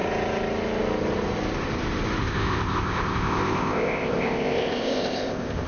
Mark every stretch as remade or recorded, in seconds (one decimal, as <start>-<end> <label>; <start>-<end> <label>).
0.0-2.2 recorded; 2.2-5.7 remade